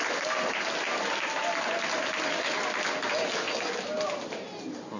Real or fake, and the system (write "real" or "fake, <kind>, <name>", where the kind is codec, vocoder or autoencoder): real